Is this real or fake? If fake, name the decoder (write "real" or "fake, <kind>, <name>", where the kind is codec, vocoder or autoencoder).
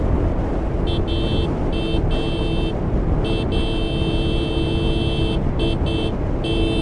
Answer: real